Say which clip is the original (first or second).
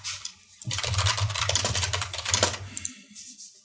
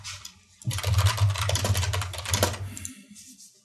second